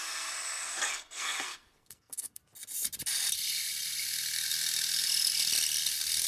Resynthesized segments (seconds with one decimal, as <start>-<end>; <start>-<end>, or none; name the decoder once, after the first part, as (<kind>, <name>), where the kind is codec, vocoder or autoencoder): 0.0-2.4 (codec, SNAC)